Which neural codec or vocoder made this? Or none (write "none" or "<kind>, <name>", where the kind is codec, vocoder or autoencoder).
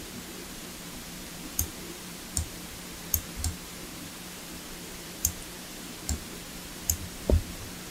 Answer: vocoder, BigVGAN v2